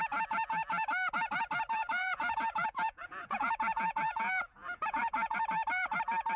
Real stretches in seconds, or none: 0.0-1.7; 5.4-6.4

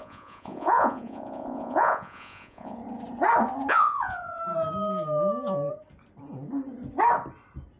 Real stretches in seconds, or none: 2.8-3.7; 4.4-7.8

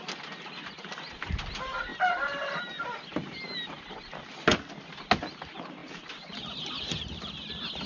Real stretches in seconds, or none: 0.0-1.9; 2.6-5.8; 7.5-7.9

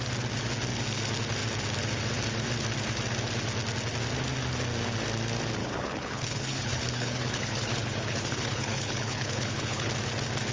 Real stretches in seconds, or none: 0.0-5.6; 9.9-10.5

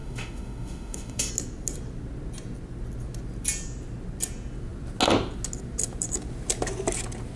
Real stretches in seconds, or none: 1.3-7.4

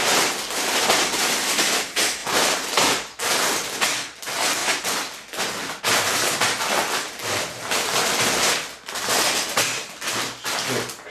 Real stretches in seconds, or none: 0.0-2.2; 3.3-11.1

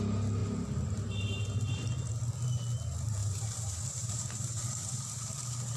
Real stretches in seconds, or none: 0.0-3.2